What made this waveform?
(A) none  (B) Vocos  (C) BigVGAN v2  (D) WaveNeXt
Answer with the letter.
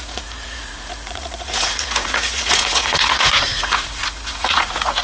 B